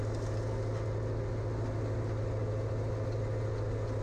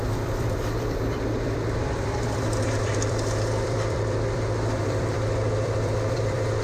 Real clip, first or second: first